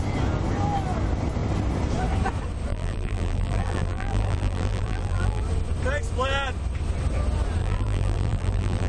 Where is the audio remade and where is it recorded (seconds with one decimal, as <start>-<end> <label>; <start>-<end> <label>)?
0.0-2.7 recorded; 2.7-5.4 remade; 5.4-7.6 recorded; 7.6-8.9 remade

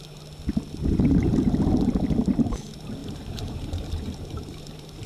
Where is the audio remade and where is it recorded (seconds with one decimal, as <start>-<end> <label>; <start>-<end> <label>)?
0.0-3.0 recorded; 3.0-5.1 remade

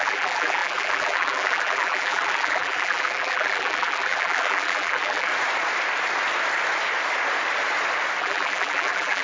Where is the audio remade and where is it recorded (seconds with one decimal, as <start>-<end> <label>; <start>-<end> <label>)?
0.0-5.3 remade; 5.3-8.2 recorded; 8.2-9.2 remade

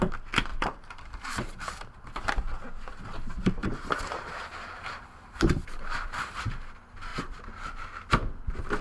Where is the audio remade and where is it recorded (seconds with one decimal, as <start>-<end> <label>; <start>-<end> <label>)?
0.0-0.5 recorded; 0.5-2.1 remade; 2.1-3.6 recorded; 3.6-6.6 remade; 6.6-7.1 recorded; 7.1-8.1 remade; 8.1-8.8 recorded

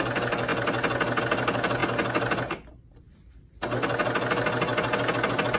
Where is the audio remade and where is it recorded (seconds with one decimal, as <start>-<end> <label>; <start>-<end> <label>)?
0.0-5.6 recorded

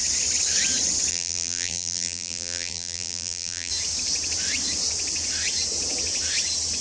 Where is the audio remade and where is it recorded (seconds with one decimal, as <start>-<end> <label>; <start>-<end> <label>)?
0.0-1.1 recorded; 1.1-3.7 remade; 3.7-6.8 recorded

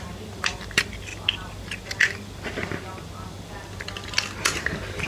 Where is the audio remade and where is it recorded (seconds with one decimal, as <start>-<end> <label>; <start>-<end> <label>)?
0.0-5.1 recorded